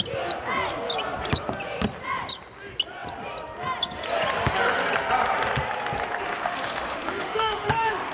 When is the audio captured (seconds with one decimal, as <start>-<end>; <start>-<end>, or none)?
0.0-6.2